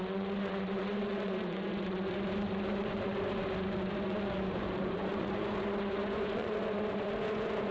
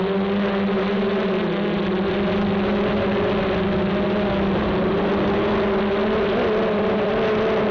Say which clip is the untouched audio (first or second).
second